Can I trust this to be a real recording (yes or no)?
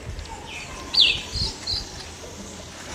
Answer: yes